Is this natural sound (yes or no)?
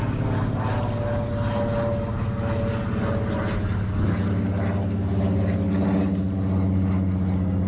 yes